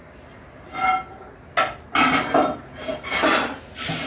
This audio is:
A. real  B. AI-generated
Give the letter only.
A